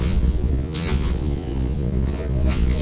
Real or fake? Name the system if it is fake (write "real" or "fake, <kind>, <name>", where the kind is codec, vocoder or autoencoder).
fake, vocoder, Vocos